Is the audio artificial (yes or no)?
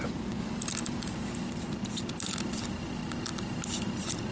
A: no